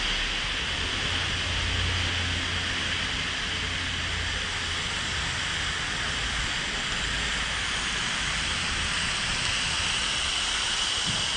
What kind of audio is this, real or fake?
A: real